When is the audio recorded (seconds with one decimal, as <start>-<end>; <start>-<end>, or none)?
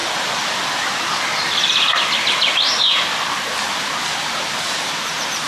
1.9-5.5